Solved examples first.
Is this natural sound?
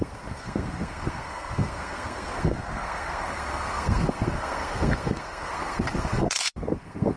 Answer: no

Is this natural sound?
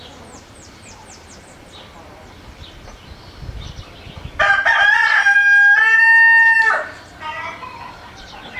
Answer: yes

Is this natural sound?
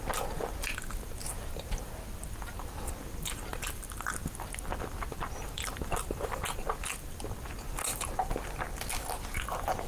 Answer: yes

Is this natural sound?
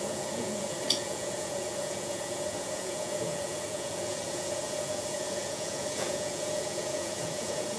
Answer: no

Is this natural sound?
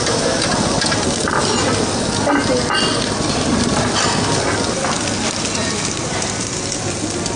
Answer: yes